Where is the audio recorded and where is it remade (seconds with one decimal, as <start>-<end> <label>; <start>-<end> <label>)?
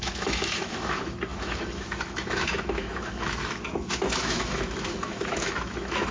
0.0-6.1 remade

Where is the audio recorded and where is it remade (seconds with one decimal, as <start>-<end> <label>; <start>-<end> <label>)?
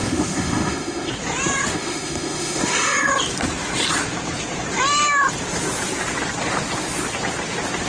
0.0-1.1 remade; 1.1-1.7 recorded; 1.7-3.1 remade; 3.1-7.9 recorded